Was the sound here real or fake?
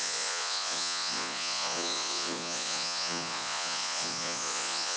fake